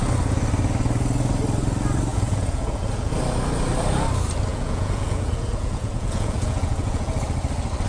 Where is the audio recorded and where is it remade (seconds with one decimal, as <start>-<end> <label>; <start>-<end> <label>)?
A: 0.0-2.1 recorded; 2.1-3.1 remade; 3.1-4.5 recorded; 4.5-7.2 remade; 7.2-7.9 recorded